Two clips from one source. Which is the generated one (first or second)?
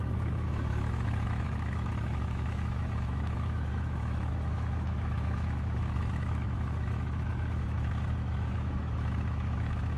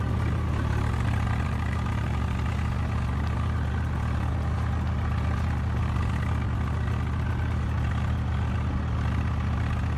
first